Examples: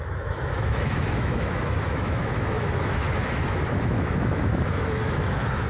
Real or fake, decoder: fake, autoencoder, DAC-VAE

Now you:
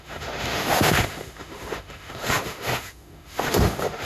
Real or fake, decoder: fake, autoencoder, DAC-VAE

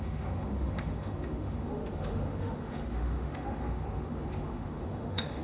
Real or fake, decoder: fake, autoencoder, DAC-VAE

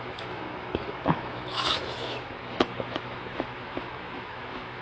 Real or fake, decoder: fake, autoencoder, DAC-VAE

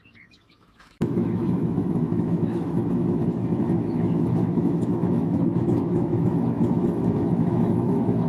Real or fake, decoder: fake, autoencoder, DAC-VAE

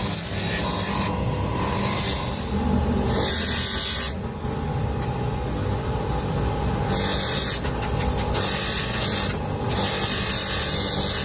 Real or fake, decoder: real